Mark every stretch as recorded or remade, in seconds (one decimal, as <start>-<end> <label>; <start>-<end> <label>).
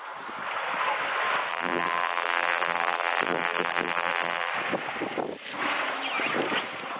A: 0.0-1.5 recorded; 1.5-4.5 remade; 4.5-7.0 recorded